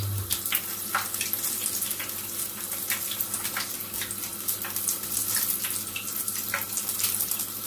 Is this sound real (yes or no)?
yes